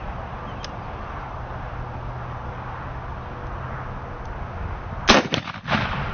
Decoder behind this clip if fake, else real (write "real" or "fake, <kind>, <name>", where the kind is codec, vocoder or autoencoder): real